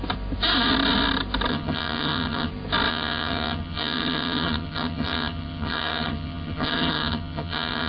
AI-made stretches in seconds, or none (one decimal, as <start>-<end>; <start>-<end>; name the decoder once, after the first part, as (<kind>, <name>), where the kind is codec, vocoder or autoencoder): 1.5-2.5 (vocoder, HiFi-GAN); 2.9-7.9